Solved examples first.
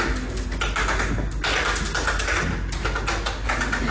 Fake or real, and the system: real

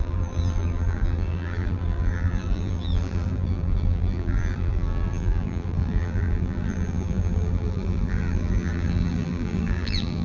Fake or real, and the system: fake, vocoder, BigVGAN v2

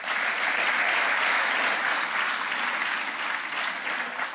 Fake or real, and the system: real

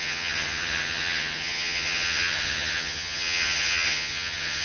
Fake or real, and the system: fake, vocoder, HiFi-GAN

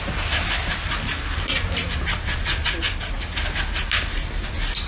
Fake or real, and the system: real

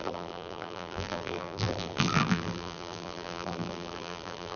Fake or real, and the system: fake, vocoder, BigVGAN v2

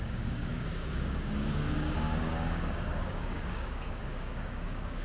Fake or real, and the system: fake, codec, DAC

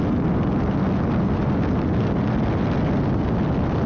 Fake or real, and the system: real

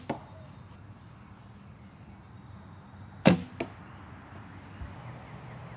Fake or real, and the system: real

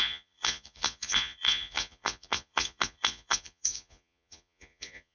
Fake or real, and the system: fake, vocoder, Vocos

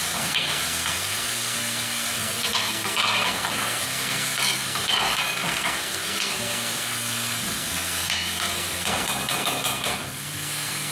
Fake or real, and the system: fake, codec, SNAC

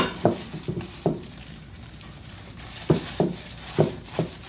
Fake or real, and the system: fake, vocoder, BigVGAN v2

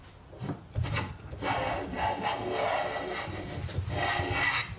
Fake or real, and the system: real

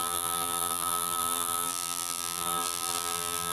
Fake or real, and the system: fake, vocoder, BigVGAN v2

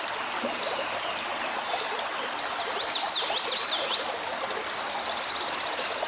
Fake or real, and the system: real